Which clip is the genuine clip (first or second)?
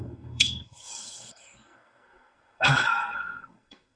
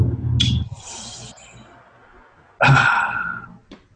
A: second